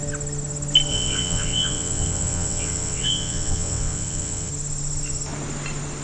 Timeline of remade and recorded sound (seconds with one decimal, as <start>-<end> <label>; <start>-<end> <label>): 0.0-0.9 recorded; 0.9-4.5 remade; 4.5-6.0 recorded